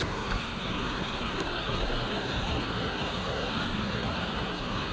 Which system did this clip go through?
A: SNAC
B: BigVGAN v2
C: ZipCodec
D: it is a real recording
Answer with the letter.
A